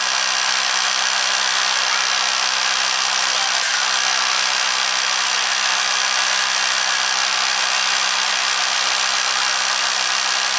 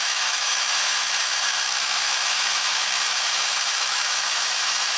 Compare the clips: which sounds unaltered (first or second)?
first